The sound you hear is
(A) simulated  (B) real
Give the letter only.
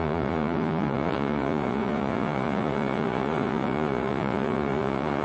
A